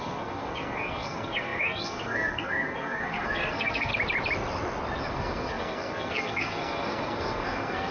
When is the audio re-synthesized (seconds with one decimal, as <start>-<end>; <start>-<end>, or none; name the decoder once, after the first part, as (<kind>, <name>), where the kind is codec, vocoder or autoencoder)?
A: 0.0-3.9 (codec, SNAC); 5.1-7.9